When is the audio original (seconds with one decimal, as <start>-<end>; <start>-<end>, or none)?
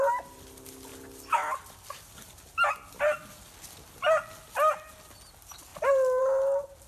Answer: 0.0-6.9